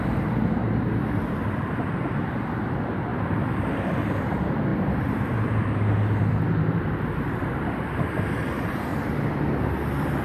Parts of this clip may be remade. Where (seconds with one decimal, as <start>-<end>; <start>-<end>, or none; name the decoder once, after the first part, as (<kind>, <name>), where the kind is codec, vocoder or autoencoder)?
0.0-4.7 (vocoder, BigVGAN v2); 5.6-8.9; 9.6-10.2